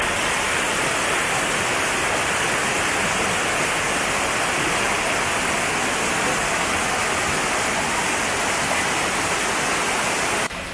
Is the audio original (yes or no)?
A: yes